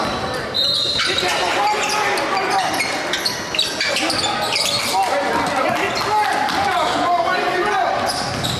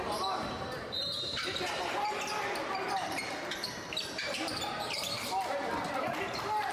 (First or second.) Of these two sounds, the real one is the first